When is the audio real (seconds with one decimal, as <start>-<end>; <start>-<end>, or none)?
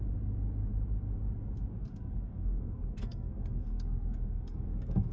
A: 0.0-1.7